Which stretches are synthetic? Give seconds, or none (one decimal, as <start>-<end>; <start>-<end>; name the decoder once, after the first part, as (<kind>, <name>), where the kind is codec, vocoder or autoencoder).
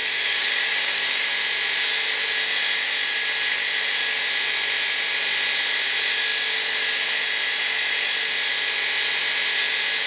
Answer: 0.0-1.3 (codec, DAC)